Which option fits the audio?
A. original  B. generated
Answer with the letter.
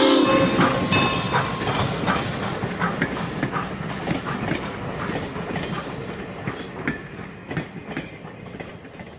A